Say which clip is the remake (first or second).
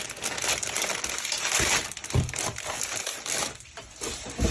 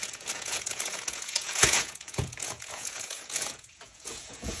second